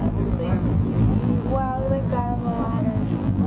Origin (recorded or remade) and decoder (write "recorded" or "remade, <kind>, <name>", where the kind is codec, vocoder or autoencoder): remade, vocoder, BigVGAN v2